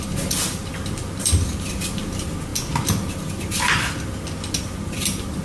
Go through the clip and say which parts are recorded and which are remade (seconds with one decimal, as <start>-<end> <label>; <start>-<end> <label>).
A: 0.0-5.4 recorded